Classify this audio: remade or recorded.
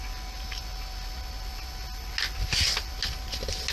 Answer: recorded